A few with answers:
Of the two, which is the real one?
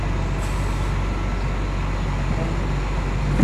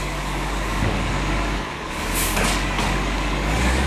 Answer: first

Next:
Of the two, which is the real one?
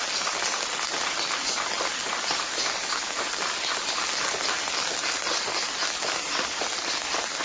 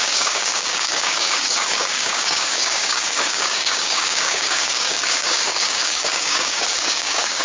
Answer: first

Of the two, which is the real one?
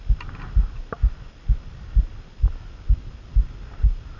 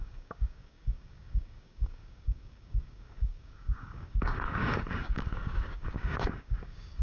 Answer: first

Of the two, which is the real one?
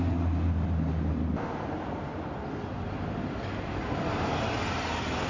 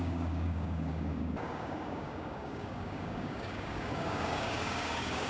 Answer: first